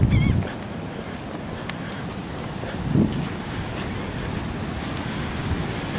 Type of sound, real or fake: real